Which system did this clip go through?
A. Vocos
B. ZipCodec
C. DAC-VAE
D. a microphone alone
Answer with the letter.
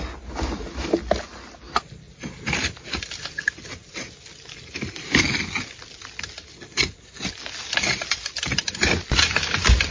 D